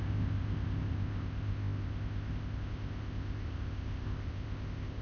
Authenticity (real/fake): fake